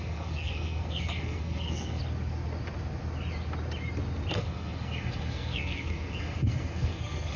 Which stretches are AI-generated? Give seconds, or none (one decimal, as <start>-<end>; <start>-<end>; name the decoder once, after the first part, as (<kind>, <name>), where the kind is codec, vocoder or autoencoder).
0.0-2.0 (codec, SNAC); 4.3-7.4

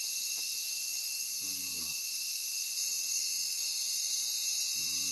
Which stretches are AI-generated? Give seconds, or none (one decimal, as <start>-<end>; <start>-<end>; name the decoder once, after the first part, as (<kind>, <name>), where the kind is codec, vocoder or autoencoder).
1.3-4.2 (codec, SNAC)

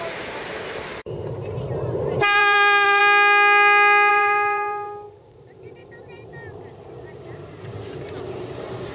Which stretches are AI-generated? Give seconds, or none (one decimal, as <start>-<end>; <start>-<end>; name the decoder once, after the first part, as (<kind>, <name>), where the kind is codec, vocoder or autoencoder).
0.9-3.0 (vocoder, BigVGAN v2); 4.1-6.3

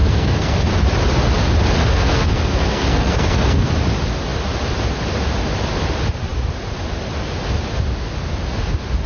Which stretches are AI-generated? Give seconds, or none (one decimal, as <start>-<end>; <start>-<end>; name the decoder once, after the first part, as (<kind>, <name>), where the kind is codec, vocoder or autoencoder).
0.0-0.7 (codec, SNAC); 1.8-3.7